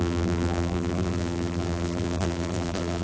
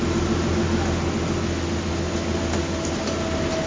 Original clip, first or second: second